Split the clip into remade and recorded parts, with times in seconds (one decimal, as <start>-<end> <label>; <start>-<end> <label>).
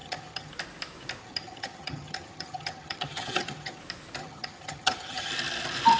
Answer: 0.0-0.5 remade; 0.5-1.2 recorded; 1.2-3.8 remade; 3.8-4.2 recorded; 4.2-5.3 remade; 5.3-6.0 recorded